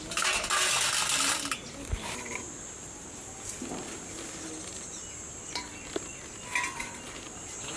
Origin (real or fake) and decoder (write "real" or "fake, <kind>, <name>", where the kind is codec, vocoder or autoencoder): real